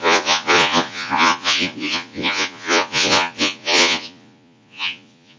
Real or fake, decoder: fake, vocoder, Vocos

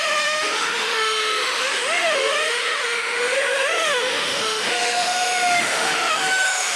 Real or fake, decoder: fake, autoencoder, DAC-VAE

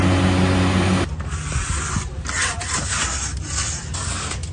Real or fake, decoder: real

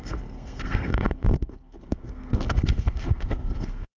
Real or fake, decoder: fake, codec, SNAC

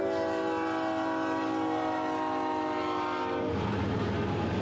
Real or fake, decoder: real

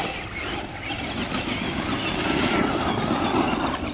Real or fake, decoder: real